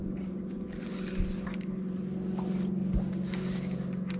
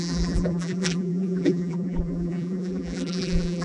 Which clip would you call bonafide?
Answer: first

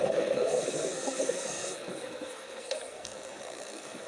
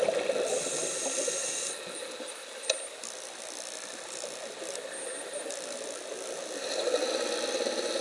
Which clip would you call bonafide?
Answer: second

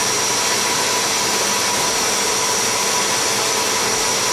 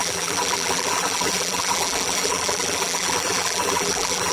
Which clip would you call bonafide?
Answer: first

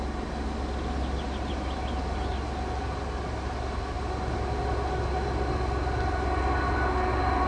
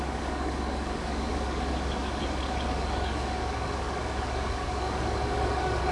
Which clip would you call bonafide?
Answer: first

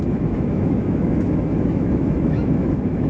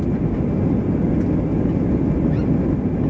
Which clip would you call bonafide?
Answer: second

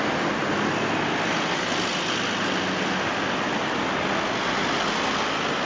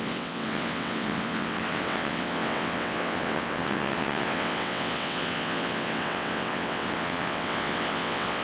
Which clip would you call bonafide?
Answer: first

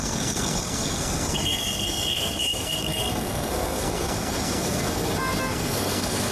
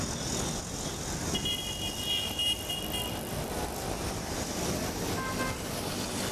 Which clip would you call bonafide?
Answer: second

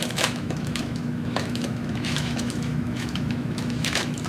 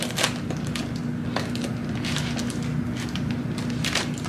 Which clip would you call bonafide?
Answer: second